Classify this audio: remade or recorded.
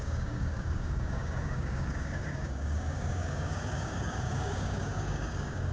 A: remade